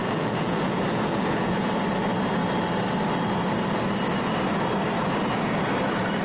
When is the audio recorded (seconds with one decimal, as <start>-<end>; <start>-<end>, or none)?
1.7-6.2